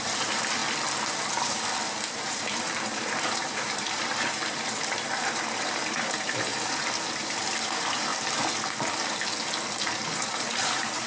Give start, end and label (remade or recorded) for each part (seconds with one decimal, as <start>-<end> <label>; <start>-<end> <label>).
0.0-0.6 remade; 0.6-2.1 recorded; 2.1-6.5 remade; 6.5-7.2 recorded; 7.2-8.1 remade; 8.1-9.7 recorded; 9.7-11.1 remade